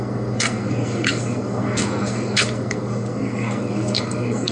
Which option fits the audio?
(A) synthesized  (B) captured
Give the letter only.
A